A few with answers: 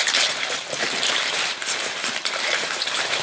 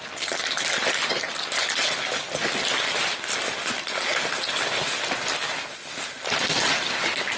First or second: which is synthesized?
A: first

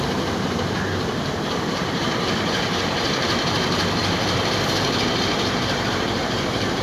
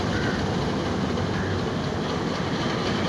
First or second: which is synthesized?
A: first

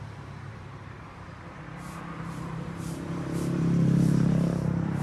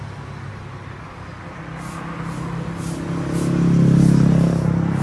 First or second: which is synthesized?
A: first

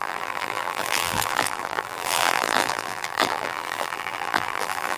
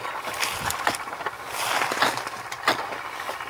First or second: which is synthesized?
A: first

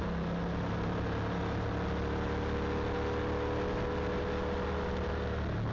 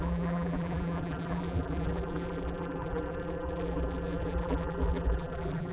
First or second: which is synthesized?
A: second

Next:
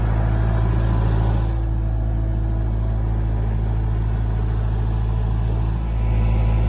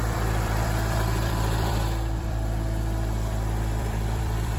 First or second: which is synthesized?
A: second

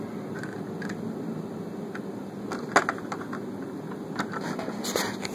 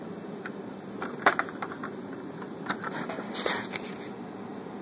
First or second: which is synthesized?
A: second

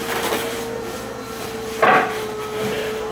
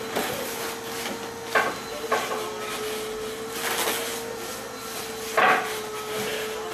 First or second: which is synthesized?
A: first